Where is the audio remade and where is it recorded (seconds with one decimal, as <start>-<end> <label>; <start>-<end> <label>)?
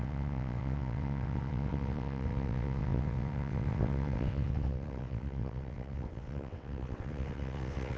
0.0-8.0 remade